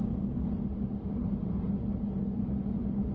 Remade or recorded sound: recorded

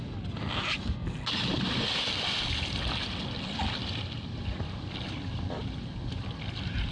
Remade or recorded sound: recorded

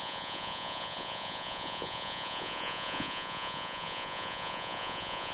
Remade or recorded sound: remade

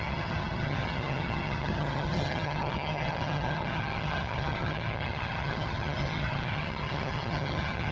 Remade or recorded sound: remade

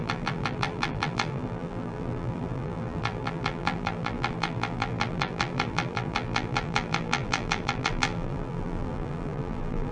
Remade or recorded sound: remade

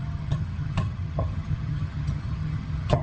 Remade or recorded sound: remade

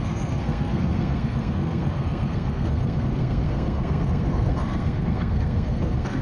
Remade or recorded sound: remade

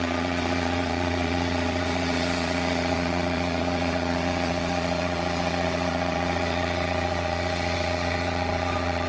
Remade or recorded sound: remade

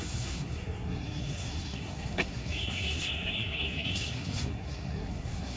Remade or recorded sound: remade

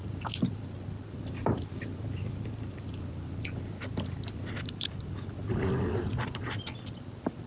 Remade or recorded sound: recorded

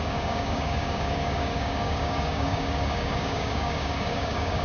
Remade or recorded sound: remade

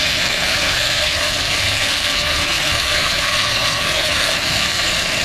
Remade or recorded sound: remade